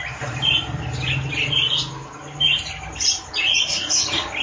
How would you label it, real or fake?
real